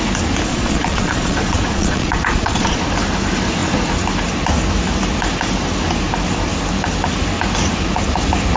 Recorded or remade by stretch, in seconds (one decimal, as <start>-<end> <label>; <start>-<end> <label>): 0.0-0.5 recorded; 0.5-2.8 remade; 2.8-8.6 recorded